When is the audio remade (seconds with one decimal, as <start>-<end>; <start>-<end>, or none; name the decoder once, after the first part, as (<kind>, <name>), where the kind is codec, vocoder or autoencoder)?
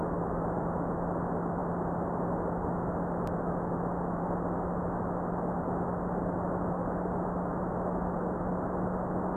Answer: none